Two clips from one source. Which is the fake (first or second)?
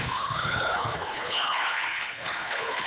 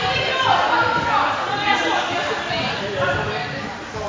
first